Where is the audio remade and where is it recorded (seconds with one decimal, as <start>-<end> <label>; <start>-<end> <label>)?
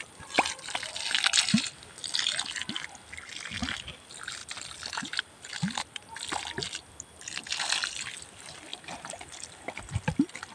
0.0-8.7 recorded; 8.7-9.8 remade; 9.8-10.5 recorded